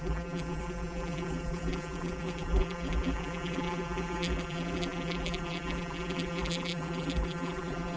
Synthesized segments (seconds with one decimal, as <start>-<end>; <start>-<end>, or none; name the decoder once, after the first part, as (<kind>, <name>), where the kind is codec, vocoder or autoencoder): 0.0-8.0 (vocoder, BigVGAN v2)